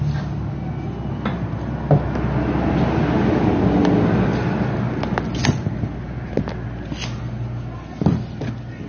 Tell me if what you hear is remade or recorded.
recorded